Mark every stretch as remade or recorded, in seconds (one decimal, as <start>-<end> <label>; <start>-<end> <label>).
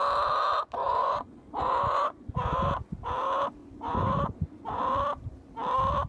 0.0-0.8 recorded; 0.8-2.7 remade; 2.7-3.6 recorded; 3.6-4.8 remade; 4.8-6.1 recorded